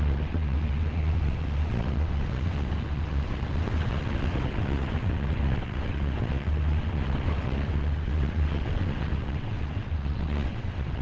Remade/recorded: remade